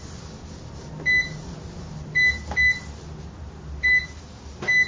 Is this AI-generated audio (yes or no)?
no